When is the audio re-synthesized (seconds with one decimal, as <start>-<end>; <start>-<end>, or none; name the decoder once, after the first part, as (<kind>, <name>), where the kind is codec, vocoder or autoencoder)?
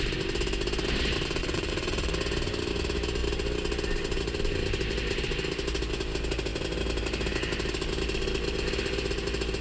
1.4-2.1 (vocoder, WaveNeXt)